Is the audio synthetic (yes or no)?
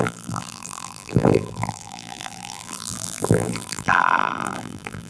yes